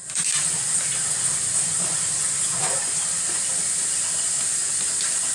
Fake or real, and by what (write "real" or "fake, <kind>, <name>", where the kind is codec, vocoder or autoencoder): real